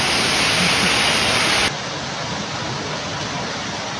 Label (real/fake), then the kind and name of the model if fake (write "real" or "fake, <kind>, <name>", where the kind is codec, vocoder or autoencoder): real